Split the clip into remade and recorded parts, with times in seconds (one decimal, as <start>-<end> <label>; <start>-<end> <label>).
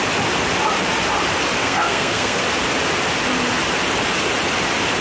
0.0-1.6 recorded; 1.6-2.4 remade; 2.4-5.0 recorded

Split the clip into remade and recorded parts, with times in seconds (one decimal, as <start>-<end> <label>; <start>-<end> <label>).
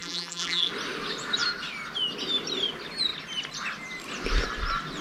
0.0-0.7 remade; 0.7-5.0 recorded